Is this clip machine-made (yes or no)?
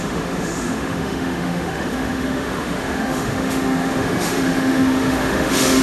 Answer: yes